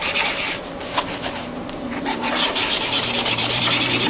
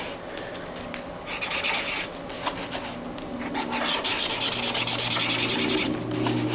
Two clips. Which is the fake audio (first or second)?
first